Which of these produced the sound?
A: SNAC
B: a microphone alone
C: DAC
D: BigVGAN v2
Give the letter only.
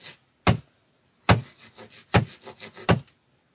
B